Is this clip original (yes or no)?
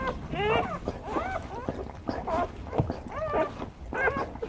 yes